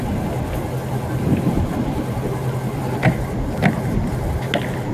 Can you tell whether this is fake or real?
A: real